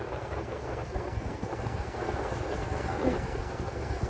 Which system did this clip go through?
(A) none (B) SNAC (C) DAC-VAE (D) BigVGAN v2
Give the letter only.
B